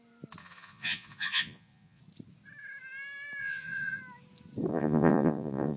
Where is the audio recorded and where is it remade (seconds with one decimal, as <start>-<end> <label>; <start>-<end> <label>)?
0.0-0.4 recorded; 0.4-2.0 remade; 2.0-3.4 recorded; 3.4-4.0 remade; 4.0-4.7 recorded; 4.7-5.8 remade